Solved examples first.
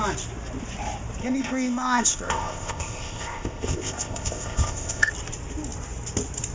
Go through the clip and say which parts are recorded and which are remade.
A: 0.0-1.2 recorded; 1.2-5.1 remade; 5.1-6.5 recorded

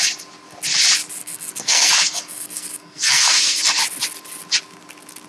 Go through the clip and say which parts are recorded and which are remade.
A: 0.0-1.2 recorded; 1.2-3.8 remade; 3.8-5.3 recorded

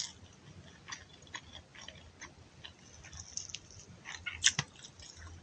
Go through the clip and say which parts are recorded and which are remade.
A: 0.0-5.4 recorded

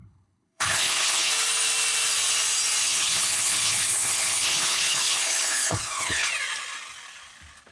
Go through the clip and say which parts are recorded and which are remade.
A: 0.0-1.3 remade; 1.3-2.8 recorded; 2.8-6.3 remade; 6.3-7.7 recorded

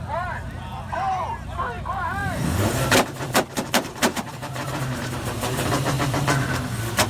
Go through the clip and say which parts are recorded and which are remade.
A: 0.0-2.2 recorded; 2.2-6.5 remade; 6.5-7.1 recorded

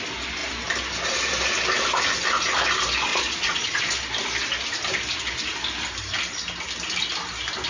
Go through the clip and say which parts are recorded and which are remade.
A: 0.0-3.1 recorded; 3.1-3.9 remade; 3.9-7.7 recorded

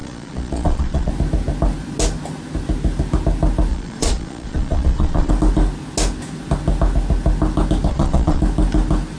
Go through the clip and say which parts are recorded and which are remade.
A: 0.0-1.1 remade; 1.1-3.7 recorded; 3.7-5.3 remade; 5.3-7.9 recorded; 7.9-8.4 remade; 8.4-9.2 recorded